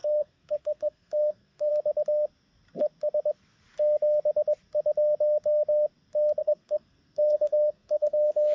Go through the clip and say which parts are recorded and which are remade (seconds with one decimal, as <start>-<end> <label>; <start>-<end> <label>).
0.0-1.7 remade; 1.7-6.4 recorded; 6.4-8.5 remade